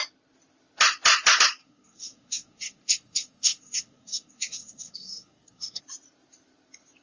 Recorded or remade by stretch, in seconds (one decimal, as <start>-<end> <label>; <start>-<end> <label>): 0.0-1.6 recorded; 1.6-5.8 remade; 5.8-7.0 recorded